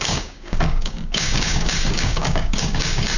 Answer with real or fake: fake